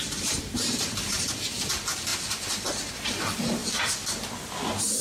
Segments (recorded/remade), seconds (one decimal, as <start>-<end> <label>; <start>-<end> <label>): 0.0-3.6 remade; 3.6-5.0 recorded